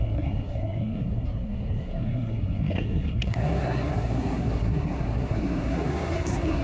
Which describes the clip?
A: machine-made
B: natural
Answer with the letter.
A